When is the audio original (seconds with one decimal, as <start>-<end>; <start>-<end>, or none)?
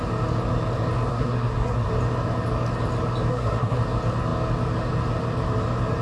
0.0-1.1; 1.9-3.3; 3.8-6.0